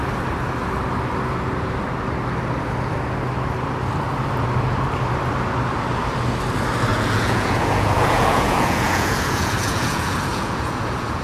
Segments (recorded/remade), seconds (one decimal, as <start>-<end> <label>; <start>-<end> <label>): 0.0-6.9 recorded; 6.9-11.2 remade